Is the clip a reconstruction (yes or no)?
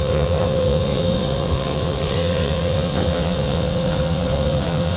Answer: yes